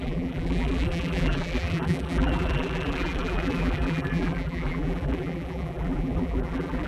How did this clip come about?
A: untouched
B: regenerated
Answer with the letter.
B